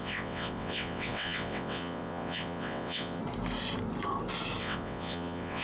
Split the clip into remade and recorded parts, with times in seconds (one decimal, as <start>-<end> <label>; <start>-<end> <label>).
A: 0.0-3.2 remade; 3.2-4.6 recorded; 4.6-5.6 remade